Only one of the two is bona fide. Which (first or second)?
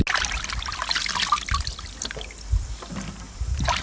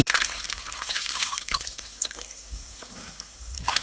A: first